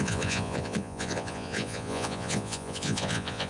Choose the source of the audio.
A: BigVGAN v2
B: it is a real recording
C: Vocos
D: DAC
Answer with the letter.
C